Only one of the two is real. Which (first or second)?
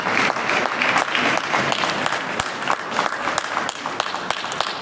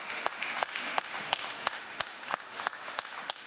first